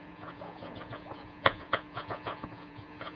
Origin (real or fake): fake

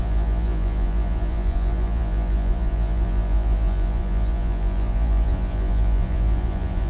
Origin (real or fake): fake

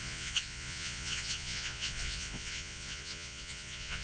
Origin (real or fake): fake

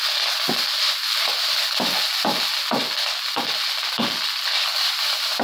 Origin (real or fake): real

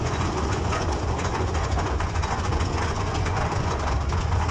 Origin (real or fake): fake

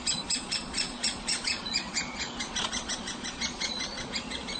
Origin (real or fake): fake